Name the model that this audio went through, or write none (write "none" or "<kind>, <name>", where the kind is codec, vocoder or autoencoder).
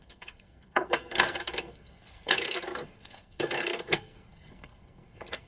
codec, SNAC